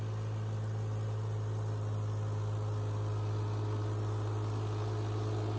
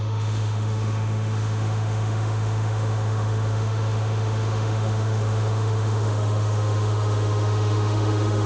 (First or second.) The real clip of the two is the first